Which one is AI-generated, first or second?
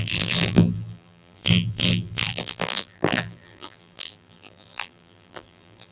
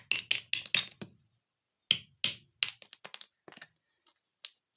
first